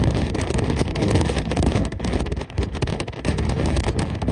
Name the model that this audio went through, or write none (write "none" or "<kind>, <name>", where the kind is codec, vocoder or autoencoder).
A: autoencoder, DAC-VAE